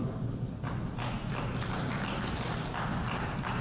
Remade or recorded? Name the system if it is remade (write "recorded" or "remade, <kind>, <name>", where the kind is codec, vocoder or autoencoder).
recorded